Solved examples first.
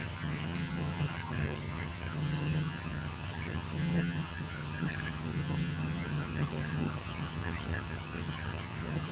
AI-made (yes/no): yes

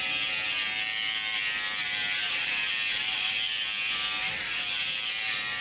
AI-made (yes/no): yes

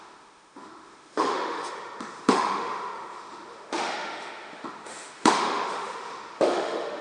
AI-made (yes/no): yes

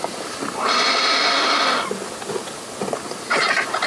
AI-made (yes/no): no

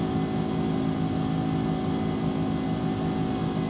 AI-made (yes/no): no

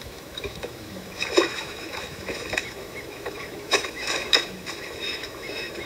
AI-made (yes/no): yes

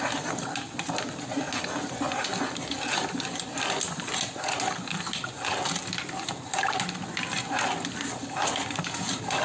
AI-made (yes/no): no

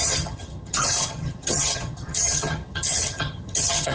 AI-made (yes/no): yes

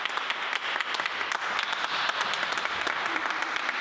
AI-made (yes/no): no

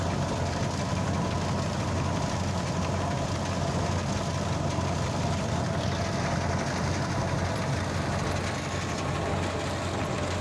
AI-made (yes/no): no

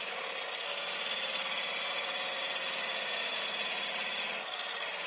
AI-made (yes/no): no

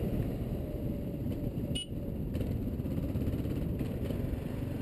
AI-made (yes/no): no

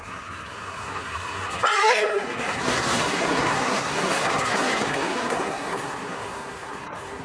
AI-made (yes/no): yes